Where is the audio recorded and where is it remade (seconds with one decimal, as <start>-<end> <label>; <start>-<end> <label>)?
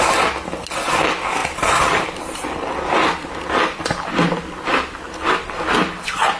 0.0-3.2 recorded; 3.2-4.4 remade; 4.4-6.4 recorded